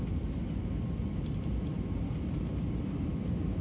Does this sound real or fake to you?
real